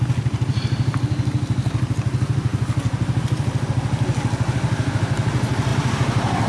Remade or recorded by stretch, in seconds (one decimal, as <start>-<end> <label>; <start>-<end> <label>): 0.0-5.7 recorded; 5.7-6.5 remade